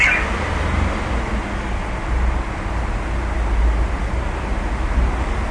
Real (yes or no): yes